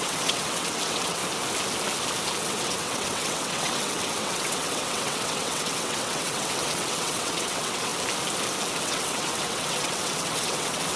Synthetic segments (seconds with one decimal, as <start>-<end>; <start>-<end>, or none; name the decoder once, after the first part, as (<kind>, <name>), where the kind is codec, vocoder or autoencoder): 0.0-1.2 (vocoder, WaveNeXt); 2.5-7.9; 8.7-11.0